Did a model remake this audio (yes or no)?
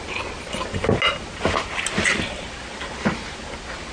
no